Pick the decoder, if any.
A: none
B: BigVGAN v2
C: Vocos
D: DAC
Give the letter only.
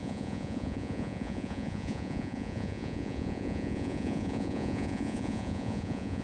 C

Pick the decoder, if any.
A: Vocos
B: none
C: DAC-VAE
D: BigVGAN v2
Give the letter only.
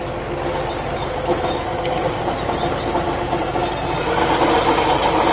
B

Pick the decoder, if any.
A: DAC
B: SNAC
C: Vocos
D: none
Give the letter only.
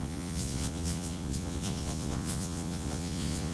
C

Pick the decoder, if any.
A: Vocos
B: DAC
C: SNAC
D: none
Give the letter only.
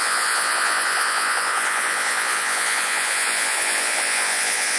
A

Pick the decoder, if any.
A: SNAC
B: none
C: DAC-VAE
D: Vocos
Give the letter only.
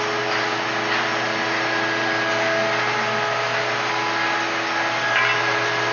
B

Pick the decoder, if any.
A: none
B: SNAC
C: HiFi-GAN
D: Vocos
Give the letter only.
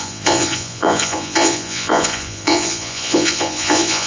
D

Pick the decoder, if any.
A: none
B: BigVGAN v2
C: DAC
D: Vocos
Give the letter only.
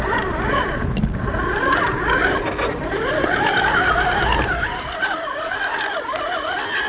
A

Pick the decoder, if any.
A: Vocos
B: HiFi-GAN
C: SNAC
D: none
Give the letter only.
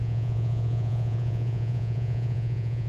A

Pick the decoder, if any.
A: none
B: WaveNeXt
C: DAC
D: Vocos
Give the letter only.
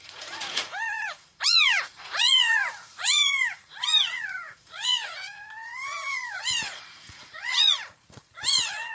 D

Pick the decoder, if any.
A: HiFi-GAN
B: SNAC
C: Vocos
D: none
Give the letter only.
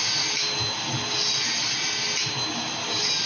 D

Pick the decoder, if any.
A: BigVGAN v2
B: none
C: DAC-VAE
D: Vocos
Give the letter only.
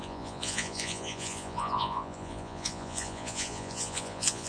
D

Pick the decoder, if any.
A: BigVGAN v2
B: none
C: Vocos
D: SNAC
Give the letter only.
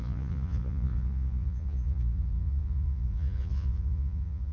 C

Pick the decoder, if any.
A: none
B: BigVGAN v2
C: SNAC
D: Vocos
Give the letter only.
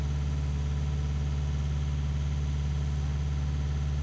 A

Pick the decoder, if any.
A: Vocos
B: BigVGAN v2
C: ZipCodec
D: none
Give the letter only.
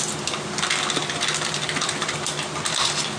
D